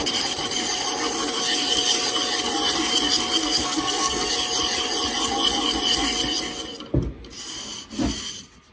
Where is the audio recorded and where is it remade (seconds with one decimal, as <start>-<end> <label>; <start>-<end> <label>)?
0.0-3.4 recorded; 3.4-4.3 remade; 4.3-8.7 recorded